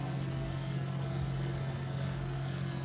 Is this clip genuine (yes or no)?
no